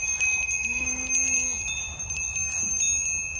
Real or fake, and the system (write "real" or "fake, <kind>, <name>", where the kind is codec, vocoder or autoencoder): real